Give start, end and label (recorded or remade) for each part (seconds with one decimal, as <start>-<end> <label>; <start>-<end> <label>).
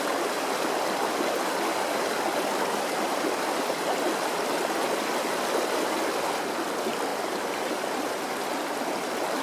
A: 0.0-7.1 recorded; 7.1-7.9 remade; 7.9-9.4 recorded